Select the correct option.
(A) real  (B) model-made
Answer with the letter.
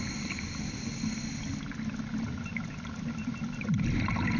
A